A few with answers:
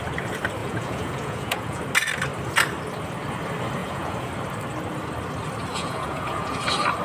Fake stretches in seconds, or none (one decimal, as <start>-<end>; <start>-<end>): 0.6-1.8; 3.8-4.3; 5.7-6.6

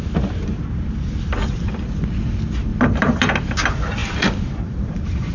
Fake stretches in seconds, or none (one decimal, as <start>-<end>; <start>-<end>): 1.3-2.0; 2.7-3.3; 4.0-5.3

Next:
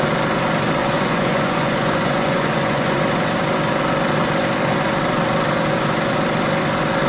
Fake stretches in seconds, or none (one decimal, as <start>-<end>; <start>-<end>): 0.8-3.0

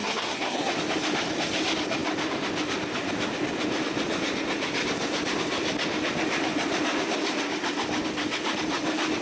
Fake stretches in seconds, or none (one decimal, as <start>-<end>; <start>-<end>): 0.0-0.7

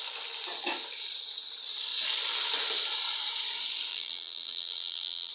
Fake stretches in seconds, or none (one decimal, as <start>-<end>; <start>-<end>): 3.9-5.3